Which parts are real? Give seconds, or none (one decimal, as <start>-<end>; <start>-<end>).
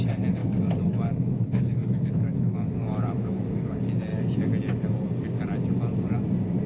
0.0-0.4; 3.5-6.7